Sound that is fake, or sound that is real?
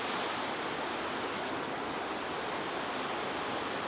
real